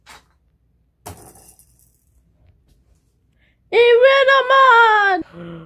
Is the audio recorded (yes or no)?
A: yes